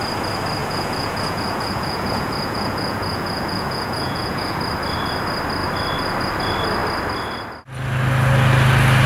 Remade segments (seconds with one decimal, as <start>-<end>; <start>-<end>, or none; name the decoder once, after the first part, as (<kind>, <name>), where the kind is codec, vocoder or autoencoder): 0.6-4.6 (vocoder, Vocos)